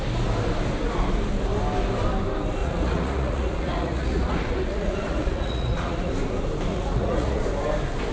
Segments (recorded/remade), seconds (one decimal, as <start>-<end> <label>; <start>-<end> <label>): 0.0-2.6 recorded; 2.6-6.1 remade; 6.1-6.7 recorded; 6.7-7.4 remade; 7.4-8.1 recorded